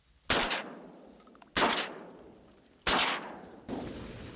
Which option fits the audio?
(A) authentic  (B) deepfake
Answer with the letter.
A